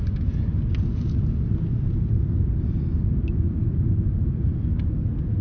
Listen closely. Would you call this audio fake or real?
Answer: real